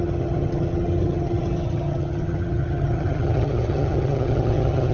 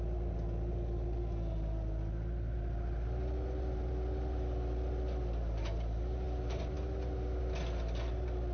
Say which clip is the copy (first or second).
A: first